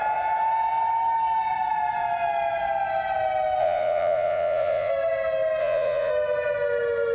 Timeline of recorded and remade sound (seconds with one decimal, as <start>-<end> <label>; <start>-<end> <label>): 0.0-3.6 recorded; 3.6-4.9 remade; 4.9-5.6 recorded; 5.6-6.1 remade; 6.1-7.1 recorded